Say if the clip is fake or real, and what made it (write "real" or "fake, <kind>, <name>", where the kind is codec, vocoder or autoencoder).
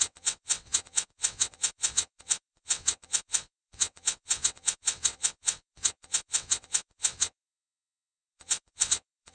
fake, vocoder, WaveNeXt